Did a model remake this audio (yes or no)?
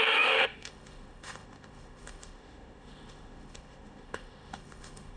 yes